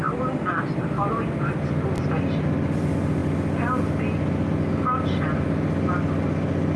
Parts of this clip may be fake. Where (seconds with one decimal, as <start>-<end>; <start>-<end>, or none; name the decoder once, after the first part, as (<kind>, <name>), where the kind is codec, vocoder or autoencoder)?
none